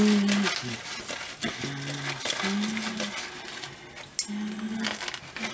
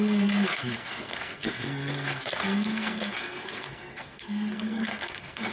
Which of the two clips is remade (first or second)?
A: second